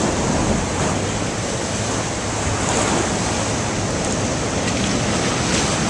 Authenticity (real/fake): real